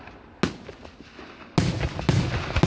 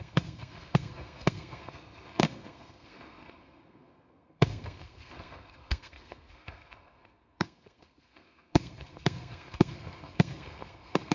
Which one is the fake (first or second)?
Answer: second